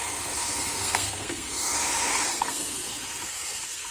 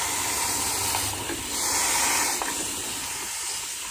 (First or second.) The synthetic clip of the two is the first